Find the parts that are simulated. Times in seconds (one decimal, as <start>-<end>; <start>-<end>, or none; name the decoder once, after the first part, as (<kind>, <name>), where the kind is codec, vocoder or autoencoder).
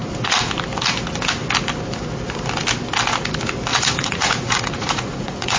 0.0-0.5 (vocoder, Vocos); 3.7-5.6